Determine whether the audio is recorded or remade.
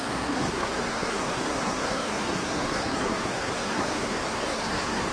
remade